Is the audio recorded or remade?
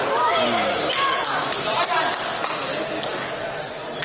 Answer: recorded